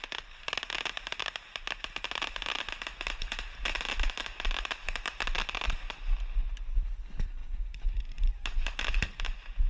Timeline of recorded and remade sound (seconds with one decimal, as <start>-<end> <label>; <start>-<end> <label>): 0.0-9.7 recorded